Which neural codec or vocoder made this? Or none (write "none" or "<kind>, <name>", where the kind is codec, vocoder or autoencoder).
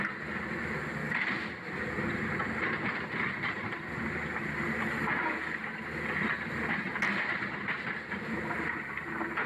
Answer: none